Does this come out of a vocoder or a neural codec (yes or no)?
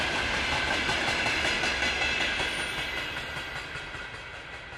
no